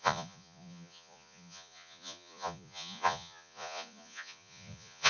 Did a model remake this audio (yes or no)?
yes